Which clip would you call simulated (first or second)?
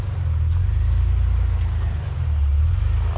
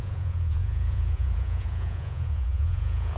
second